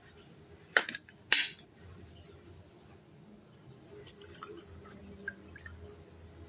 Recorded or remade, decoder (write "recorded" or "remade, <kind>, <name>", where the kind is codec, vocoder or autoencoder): recorded